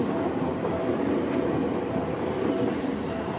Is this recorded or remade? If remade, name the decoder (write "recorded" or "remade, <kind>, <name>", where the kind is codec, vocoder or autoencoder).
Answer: recorded